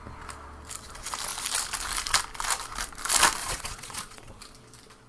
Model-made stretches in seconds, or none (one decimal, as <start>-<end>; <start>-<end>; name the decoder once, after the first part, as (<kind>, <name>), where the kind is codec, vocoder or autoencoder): 3.4-4.4 (vocoder, Vocos)